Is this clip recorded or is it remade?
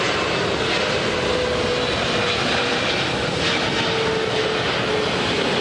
recorded